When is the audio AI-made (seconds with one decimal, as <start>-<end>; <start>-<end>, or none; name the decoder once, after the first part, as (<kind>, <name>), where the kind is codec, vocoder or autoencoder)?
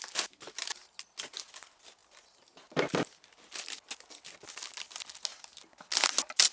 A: none